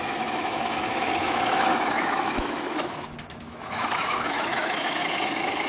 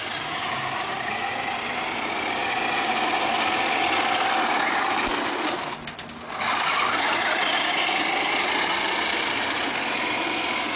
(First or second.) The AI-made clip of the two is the first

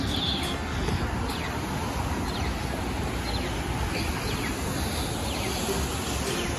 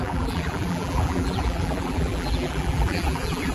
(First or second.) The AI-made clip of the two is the second